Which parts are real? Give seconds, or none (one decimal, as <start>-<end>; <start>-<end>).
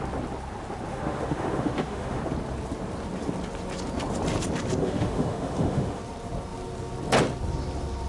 0.0-0.9; 2.2-4.8; 6.0-8.1